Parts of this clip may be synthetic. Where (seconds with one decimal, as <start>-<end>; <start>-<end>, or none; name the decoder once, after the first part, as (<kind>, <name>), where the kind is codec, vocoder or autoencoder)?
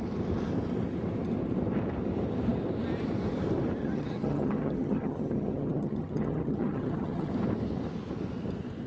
3.8-7.3 (vocoder, HiFi-GAN)